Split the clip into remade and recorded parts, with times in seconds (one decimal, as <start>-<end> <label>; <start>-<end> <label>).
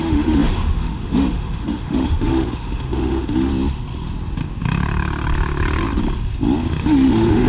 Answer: 0.0-3.5 remade; 3.5-6.8 recorded; 6.8-7.5 remade